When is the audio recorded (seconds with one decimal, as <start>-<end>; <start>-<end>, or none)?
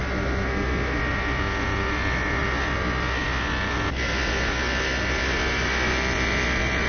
0.0-6.9